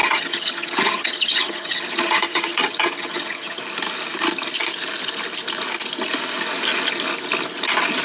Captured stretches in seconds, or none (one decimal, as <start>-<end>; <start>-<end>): 3.6-8.0